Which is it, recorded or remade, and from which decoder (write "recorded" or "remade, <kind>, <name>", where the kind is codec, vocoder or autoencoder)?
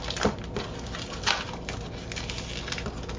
recorded